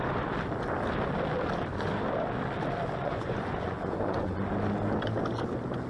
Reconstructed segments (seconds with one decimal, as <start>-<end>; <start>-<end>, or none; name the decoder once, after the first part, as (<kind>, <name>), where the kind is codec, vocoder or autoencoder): 3.0-4.4 (vocoder, Vocos)